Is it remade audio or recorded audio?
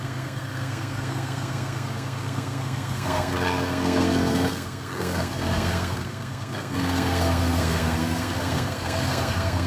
remade